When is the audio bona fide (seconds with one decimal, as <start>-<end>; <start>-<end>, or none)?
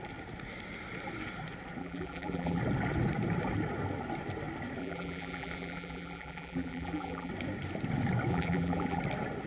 0.0-1.8; 2.6-4.8; 7.3-8.3; 9.0-9.5